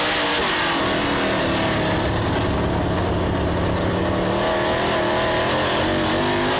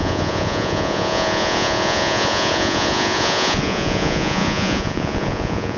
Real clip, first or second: first